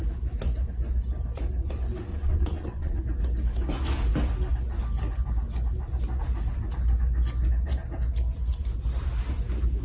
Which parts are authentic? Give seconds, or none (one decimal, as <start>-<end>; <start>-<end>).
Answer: 0.0-2.1; 3.0-9.8